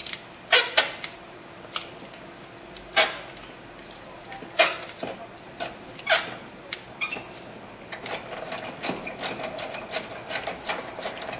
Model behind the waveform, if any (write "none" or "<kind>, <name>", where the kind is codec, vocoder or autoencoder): none